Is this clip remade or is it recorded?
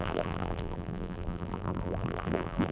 remade